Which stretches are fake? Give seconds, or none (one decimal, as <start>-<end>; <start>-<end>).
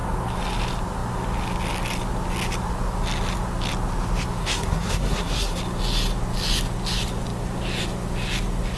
4.4-5.6